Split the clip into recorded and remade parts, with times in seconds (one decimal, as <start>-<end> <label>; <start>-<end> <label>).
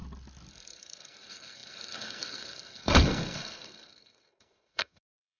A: 0.0-0.5 recorded; 0.5-5.4 remade